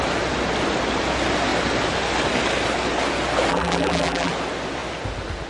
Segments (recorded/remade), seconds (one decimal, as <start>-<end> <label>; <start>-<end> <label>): 0.0-3.5 recorded; 3.5-4.3 remade; 4.3-5.5 recorded